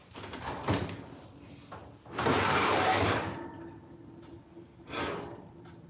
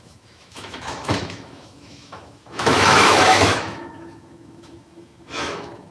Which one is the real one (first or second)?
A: first